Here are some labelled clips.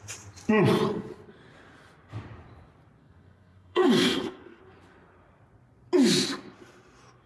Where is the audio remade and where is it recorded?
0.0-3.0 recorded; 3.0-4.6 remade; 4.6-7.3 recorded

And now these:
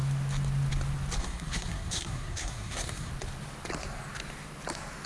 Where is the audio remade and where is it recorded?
0.0-1.2 recorded; 1.2-3.1 remade; 3.1-5.1 recorded

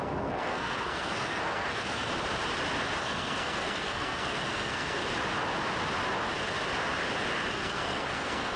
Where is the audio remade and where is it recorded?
0.0-2.1 remade; 2.1-3.0 recorded; 3.0-5.0 remade; 5.0-7.5 recorded; 7.5-8.6 remade

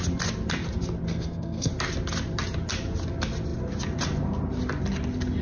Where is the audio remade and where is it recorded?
0.0-1.1 recorded; 1.1-1.7 remade; 1.7-5.4 recorded

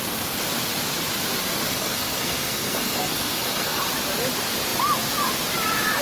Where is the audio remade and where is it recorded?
0.0-1.7 recorded; 1.7-3.9 remade; 3.9-6.0 recorded

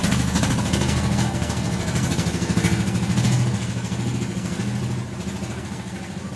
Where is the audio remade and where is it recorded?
0.0-4.8 remade; 4.8-5.5 recorded; 5.5-6.4 remade

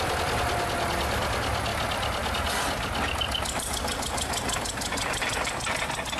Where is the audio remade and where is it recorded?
0.0-6.2 recorded